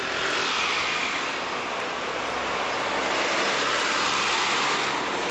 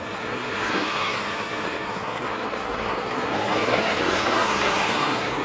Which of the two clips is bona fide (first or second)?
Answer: first